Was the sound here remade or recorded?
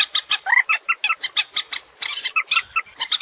recorded